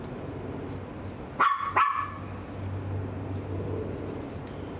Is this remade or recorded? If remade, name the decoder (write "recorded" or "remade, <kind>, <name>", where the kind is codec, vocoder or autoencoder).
recorded